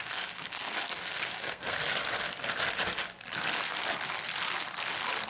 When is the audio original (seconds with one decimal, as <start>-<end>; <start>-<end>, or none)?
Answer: 1.8-5.3